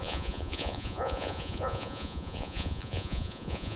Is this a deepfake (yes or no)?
yes